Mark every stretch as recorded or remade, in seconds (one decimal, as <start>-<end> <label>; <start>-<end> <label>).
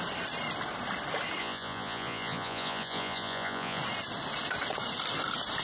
0.0-1.4 recorded; 1.4-3.8 remade; 3.8-5.6 recorded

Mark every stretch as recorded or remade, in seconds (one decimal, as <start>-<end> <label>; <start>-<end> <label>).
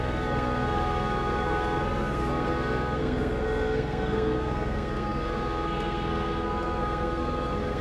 0.0-7.8 remade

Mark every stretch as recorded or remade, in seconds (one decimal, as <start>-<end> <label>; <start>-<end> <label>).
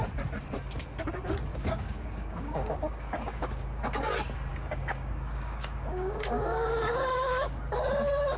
0.0-1.5 recorded; 1.5-3.8 remade; 3.8-4.5 recorded; 4.5-7.7 remade; 7.7-8.4 recorded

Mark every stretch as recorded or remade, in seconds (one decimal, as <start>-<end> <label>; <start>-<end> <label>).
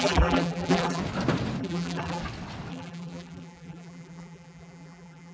0.0-1.0 remade; 1.0-1.6 recorded; 1.6-2.2 remade; 2.2-2.7 recorded; 2.7-5.3 remade